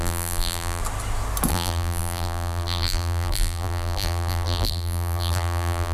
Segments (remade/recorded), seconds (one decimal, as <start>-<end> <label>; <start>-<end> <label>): 0.0-0.8 remade; 0.8-1.5 recorded; 1.5-5.9 remade